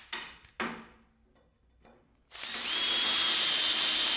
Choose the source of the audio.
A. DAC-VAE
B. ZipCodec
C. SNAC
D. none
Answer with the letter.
D